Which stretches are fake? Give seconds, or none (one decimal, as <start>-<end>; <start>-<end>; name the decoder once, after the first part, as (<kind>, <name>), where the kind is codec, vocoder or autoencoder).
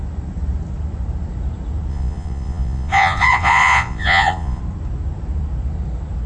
1.9-4.6 (vocoder, Vocos)